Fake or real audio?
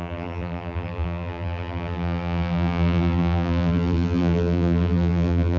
fake